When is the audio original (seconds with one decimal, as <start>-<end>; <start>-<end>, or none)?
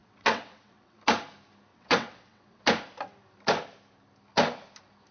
1.0-1.7; 2.6-5.1